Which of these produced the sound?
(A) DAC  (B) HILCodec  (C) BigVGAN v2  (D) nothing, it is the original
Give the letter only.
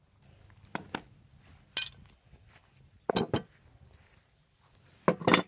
D